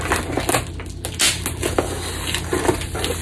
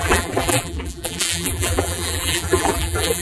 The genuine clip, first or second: first